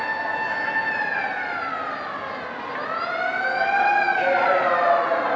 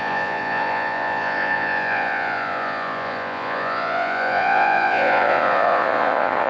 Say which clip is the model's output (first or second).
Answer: second